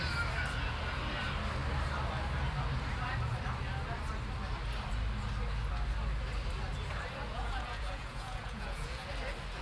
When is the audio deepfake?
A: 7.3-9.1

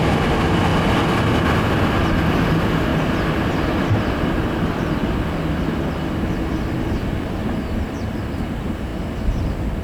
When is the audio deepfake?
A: none

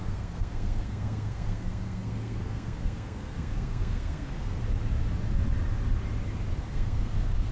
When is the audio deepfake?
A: 0.0-4.6; 6.6-7.5

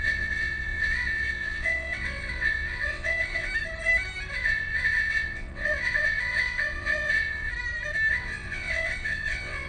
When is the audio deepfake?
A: 0.0-3.5; 4.3-7.5; 8.1-9.7

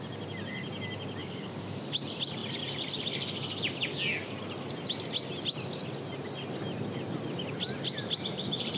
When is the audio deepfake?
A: 1.2-1.8

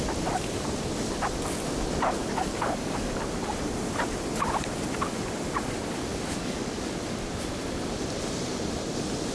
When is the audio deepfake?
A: 2.2-3.2; 6.1-7.0